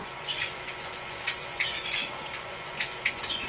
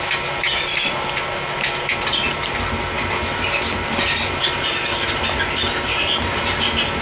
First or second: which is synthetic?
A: first